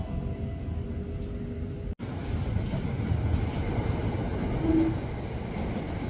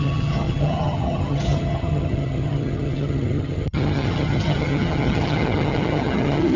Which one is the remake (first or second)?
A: second